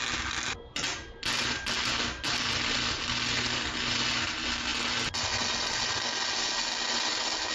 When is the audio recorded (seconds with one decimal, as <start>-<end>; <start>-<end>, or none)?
0.0-7.5